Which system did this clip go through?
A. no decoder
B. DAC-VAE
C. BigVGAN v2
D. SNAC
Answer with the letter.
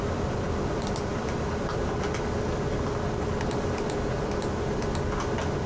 A